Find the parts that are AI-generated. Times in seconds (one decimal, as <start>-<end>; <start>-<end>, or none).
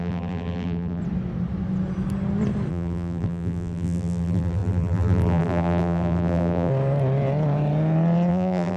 0.0-1.0; 2.7-6.7; 8.3-8.8